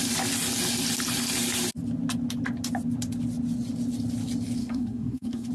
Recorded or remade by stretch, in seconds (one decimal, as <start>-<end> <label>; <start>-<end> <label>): 0.0-4.6 recorded; 4.6-5.5 remade